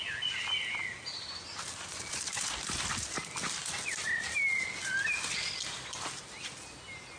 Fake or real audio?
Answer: real